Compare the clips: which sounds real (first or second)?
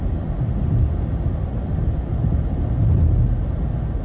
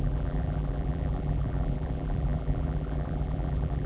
first